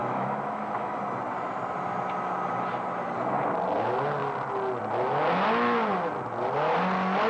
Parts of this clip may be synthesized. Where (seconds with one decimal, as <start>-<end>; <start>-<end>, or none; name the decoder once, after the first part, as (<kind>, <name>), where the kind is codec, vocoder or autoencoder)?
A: 0.0-1.0 (autoencoder, DAC-VAE)